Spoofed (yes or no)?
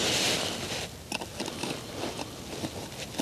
no